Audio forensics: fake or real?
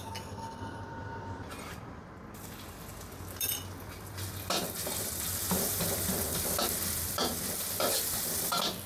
fake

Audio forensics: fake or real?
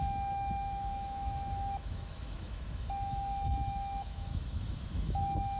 fake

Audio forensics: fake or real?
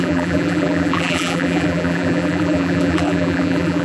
fake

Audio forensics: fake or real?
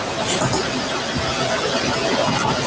real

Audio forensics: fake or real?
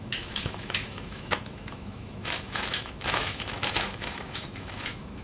fake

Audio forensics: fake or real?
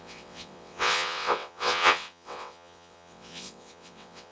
fake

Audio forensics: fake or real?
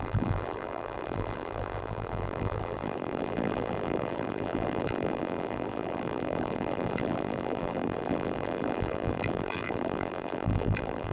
fake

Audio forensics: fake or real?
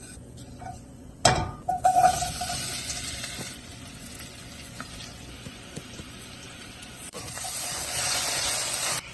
fake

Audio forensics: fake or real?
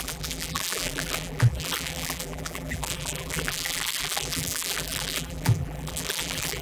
fake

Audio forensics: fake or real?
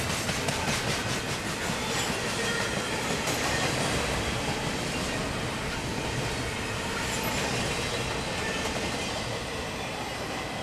real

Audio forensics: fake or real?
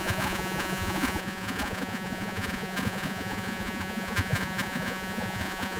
fake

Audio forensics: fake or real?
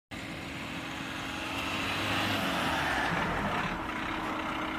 real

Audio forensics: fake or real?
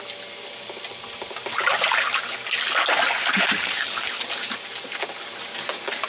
real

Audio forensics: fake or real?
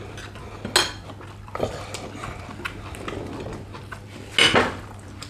real